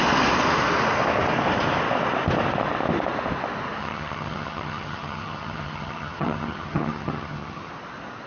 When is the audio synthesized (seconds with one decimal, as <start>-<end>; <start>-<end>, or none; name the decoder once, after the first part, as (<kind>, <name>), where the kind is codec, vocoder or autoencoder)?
3.8-7.7 (vocoder, HiFi-GAN)